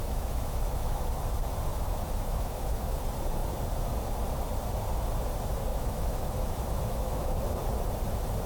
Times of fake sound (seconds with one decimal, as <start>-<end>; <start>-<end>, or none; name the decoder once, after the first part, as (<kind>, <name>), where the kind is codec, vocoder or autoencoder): 0.0-1.1 (autoencoder, DAC-VAE); 1.7-3.0; 5.7-7.4